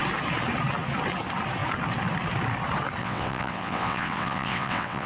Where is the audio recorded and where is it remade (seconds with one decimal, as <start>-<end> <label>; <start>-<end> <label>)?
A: 0.0-3.0 recorded; 3.0-5.1 remade

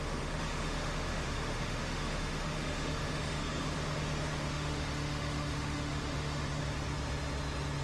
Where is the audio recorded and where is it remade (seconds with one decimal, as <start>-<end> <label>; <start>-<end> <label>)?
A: 0.0-3.6 remade; 3.6-4.5 recorded; 4.5-6.6 remade; 6.6-7.8 recorded

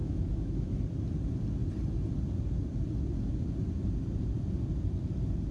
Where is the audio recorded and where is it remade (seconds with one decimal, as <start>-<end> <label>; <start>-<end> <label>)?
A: 0.0-0.8 remade; 0.8-5.5 recorded

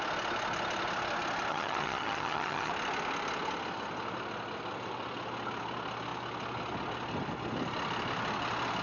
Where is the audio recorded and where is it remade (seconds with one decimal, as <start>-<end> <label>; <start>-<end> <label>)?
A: 0.0-1.5 recorded; 1.5-2.7 remade; 2.7-8.8 recorded

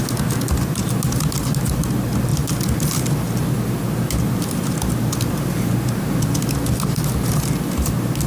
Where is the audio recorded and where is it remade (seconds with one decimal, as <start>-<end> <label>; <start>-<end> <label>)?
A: 0.0-8.3 recorded

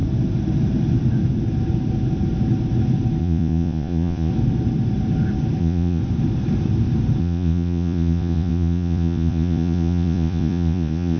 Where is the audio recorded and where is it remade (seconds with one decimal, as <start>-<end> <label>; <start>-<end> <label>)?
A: 0.0-3.2 recorded; 3.2-4.3 remade; 4.3-5.6 recorded; 5.6-6.0 remade; 6.0-7.2 recorded; 7.2-11.2 remade

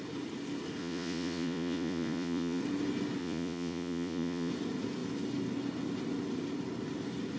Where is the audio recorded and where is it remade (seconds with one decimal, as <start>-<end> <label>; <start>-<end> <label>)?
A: 0.0-0.8 recorded; 0.8-2.6 remade; 2.6-3.2 recorded; 3.2-4.5 remade; 4.5-7.4 recorded